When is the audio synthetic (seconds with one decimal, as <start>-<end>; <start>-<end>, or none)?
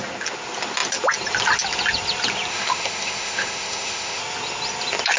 2.5-4.2